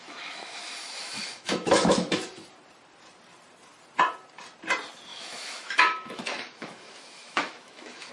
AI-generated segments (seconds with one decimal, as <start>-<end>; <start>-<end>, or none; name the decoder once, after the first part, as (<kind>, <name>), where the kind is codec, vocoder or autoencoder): 0.0-2.3 (autoencoder, DAC-VAE); 5.1-8.1